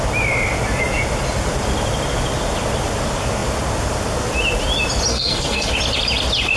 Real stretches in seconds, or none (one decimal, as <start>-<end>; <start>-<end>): 0.0-5.1; 5.7-6.6